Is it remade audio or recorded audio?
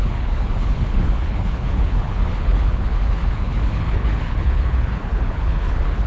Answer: remade